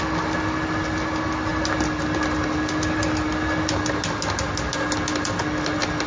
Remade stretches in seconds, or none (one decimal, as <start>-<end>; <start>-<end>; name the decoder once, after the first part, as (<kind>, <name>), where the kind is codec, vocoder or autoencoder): none